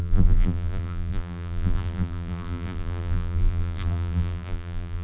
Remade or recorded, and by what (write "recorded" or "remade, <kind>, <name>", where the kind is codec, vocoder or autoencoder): remade, vocoder, BigVGAN v2